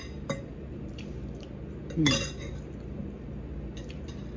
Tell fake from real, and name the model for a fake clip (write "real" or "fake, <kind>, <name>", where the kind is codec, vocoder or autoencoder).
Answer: real